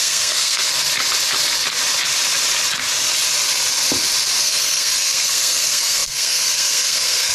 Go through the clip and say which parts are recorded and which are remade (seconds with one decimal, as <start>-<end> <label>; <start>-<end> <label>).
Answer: 0.0-0.7 remade; 0.7-4.4 recorded; 4.4-7.3 remade